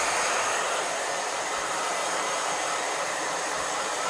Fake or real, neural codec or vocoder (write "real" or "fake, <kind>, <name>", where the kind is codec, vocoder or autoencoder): fake, vocoder, BigVGAN v2